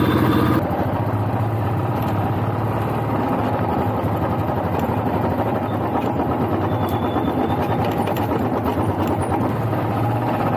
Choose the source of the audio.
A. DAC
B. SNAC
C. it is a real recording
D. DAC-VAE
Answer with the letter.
C